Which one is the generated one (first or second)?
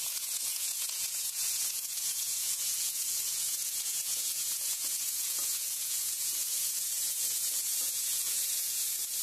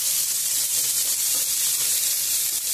first